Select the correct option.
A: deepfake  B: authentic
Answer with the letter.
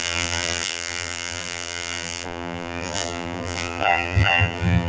A